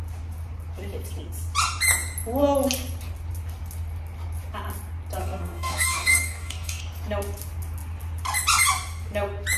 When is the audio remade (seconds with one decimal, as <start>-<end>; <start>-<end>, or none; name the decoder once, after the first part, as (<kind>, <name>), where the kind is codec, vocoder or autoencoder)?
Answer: 5.2-6.8 (codec, DAC)